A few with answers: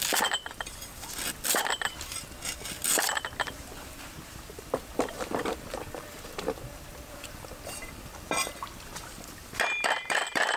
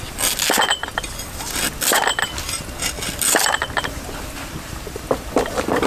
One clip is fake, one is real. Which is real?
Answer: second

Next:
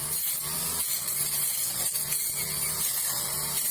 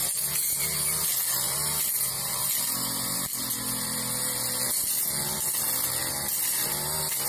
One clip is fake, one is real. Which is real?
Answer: second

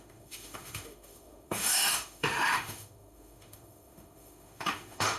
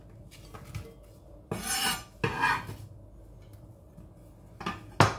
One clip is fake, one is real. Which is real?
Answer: second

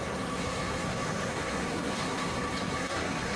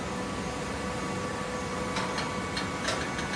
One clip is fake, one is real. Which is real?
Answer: second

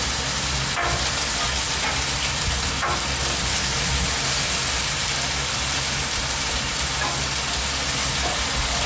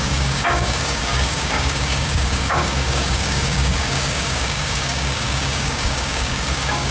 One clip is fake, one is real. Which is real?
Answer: first